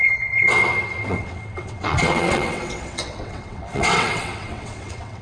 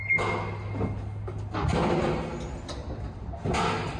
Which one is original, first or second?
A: second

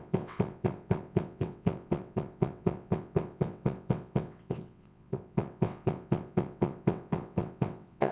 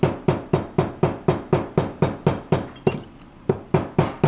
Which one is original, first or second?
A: second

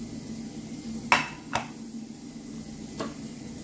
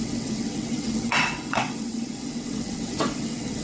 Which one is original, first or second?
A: first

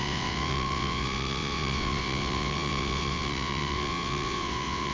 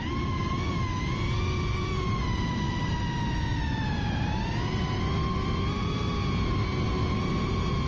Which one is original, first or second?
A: second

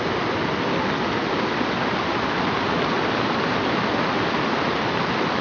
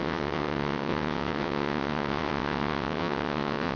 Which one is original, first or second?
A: first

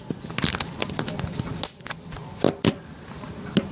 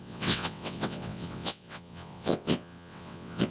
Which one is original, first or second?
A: first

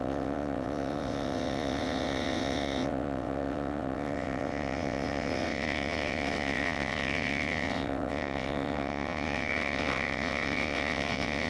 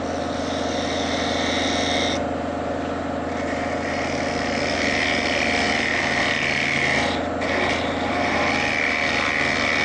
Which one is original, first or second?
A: second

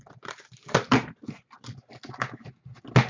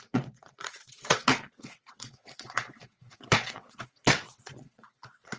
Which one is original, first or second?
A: first